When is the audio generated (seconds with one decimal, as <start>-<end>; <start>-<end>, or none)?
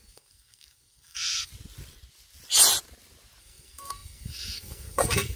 0.0-1.5; 3.4-5.4